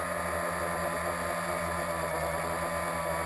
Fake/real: real